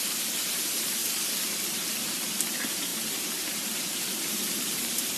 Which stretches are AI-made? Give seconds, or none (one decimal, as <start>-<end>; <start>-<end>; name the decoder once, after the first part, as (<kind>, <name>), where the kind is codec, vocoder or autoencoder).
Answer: 0.0-1.0 (vocoder, BigVGAN v2); 1.9-5.2